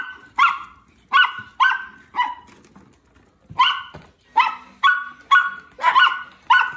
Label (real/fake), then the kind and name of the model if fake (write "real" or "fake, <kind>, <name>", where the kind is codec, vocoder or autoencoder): real